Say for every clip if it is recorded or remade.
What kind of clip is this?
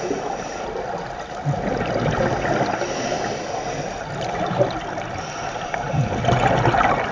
recorded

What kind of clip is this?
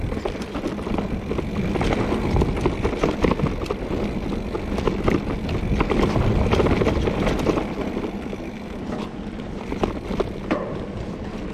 recorded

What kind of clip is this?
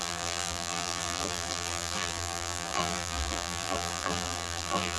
remade